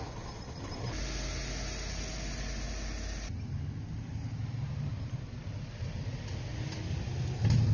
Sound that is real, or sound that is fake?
real